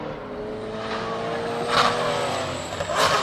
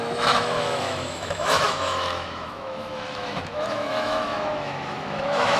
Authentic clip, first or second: first